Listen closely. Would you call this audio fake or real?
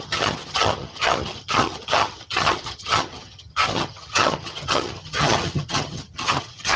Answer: fake